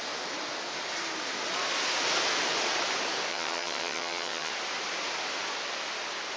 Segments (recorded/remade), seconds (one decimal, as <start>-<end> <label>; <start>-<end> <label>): 0.0-3.3 recorded; 3.3-4.5 remade; 4.5-6.4 recorded